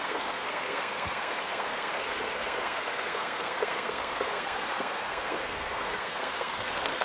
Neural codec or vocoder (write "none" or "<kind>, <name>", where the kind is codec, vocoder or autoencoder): codec, SNAC